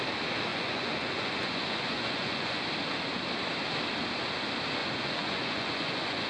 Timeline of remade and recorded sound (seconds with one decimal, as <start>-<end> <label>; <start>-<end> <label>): 0.0-0.5 recorded; 0.5-2.6 remade; 2.6-4.8 recorded; 4.8-6.3 remade